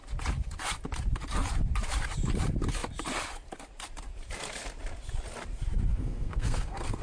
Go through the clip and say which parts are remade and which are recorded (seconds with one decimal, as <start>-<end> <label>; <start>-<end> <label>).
0.0-5.9 recorded; 5.9-7.0 remade